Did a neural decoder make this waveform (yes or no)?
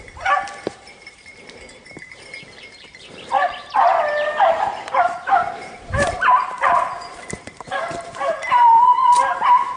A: yes